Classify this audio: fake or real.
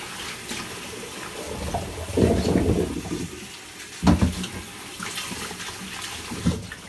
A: real